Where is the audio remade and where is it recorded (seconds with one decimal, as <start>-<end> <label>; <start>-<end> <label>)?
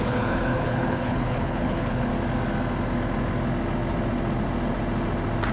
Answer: 0.0-2.1 remade; 2.1-5.5 recorded